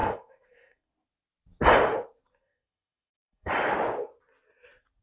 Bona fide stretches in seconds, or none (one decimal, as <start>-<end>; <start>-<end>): 0.9-2.4; 3.5-5.0